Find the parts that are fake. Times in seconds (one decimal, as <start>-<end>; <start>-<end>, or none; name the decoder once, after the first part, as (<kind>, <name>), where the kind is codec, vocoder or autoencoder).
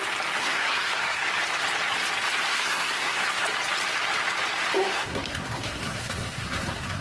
0.4-1.3 (codec, SNAC); 2.5-3.2; 4.8-7.0